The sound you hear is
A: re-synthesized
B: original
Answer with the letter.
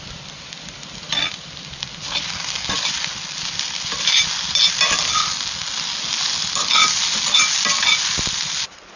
B